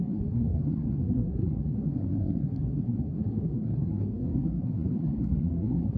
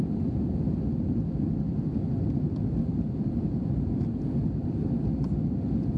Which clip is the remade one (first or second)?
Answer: first